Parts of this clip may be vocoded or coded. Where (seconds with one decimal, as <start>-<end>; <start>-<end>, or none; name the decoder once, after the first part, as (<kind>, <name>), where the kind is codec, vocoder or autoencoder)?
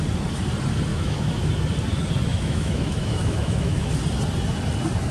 0.9-1.5 (autoencoder, DAC-VAE); 2.3-3.9